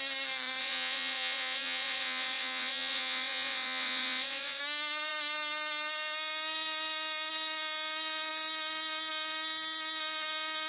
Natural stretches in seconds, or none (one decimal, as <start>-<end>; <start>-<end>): 0.0-0.6; 4.6-10.7